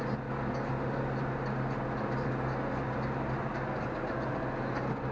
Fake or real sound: real